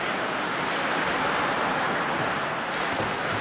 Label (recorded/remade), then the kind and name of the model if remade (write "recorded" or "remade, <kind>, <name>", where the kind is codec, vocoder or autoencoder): recorded